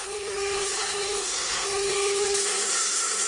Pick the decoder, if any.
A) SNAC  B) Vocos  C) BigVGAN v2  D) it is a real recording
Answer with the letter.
A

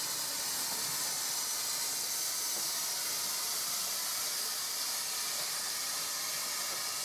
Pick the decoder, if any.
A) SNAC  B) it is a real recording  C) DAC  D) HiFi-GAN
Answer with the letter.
B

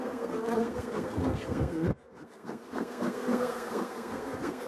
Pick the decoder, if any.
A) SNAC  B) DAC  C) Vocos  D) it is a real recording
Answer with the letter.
A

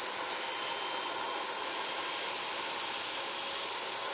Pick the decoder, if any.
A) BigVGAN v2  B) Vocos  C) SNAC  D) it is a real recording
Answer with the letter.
D